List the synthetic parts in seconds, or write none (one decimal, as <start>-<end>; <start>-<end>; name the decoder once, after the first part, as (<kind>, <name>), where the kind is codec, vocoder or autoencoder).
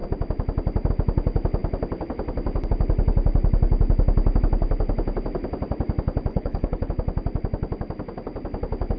6.3-6.9 (codec, HILCodec)